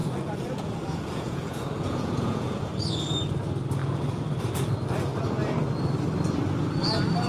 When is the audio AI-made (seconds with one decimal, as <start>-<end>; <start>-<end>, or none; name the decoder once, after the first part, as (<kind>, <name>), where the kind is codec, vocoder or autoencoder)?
0.0-2.7 (vocoder, Vocos)